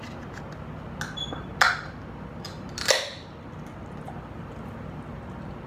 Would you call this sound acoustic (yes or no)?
yes